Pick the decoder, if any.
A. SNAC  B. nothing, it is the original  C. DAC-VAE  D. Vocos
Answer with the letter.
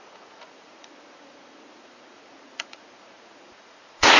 D